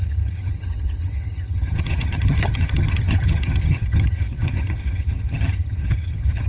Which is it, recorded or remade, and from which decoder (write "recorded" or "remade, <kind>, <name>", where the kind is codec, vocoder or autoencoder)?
remade, vocoder, HiFi-GAN